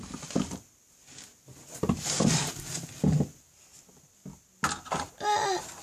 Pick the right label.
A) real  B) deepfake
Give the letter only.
A